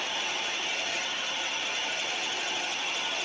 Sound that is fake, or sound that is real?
real